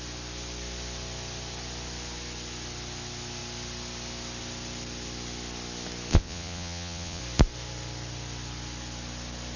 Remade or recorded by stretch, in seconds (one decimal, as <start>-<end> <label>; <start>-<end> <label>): 0.0-6.1 recorded; 6.1-7.2 remade; 7.2-9.6 recorded